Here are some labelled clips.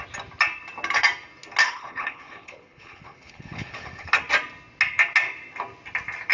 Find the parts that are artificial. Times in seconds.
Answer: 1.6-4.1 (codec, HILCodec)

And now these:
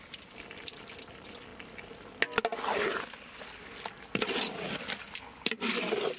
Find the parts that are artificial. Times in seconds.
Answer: none

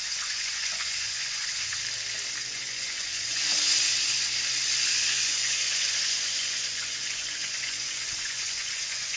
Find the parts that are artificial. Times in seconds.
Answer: 0.0-1.7 (vocoder, Vocos); 2.5-3.5; 5.1-9.2

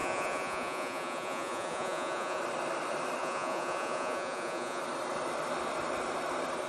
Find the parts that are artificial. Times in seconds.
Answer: 0.0-2.4 (vocoder, Vocos); 3.2-4.8

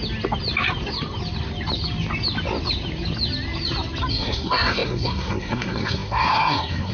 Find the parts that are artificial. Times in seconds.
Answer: 4.1-6.9 (codec, SNAC)

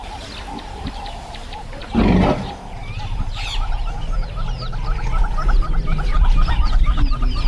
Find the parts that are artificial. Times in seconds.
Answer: 0.6-2.8 (vocoder, BigVGAN v2); 6.4-7.5